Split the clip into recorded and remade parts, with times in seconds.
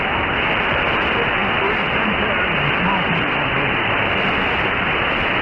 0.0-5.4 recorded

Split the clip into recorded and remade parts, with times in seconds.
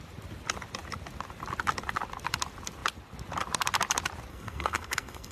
0.0-4.3 recorded; 4.3-5.3 remade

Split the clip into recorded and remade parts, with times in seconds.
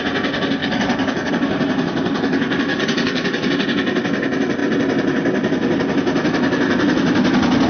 0.0-0.6 recorded; 0.6-1.3 remade; 1.3-2.7 recorded; 2.7-3.5 remade; 3.5-7.7 recorded